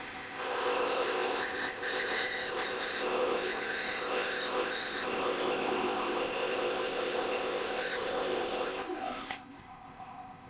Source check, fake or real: fake